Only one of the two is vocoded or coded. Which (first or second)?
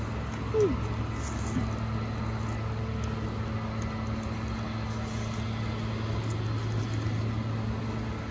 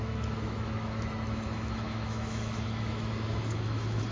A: second